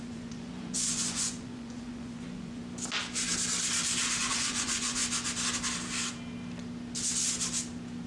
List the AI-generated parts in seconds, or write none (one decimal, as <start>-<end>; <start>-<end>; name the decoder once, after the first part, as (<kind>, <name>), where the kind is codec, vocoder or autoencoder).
0.0-2.6 (vocoder, Vocos); 4.2-5.0